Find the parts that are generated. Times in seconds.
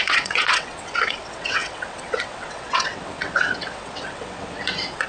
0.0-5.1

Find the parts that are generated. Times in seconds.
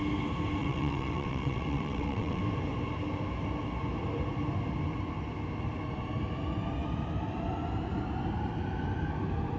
0.6-2.4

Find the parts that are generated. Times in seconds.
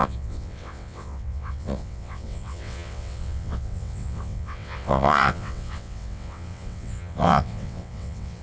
0.0-8.4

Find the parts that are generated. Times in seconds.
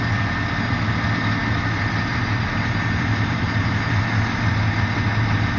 none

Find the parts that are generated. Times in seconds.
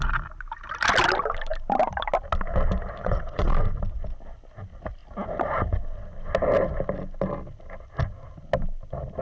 3.0-3.5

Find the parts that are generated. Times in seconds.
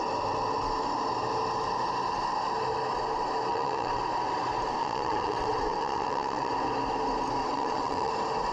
3.5-4.0; 4.8-6.5; 7.4-8.1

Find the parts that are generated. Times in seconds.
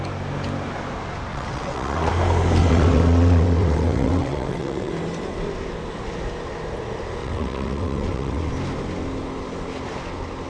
1.3-2.1; 2.6-4.9; 7.2-8.5